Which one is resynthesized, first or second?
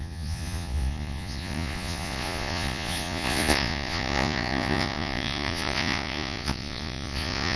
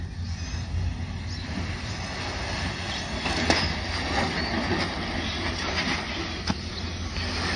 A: first